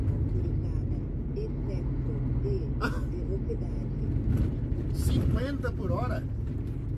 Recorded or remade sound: recorded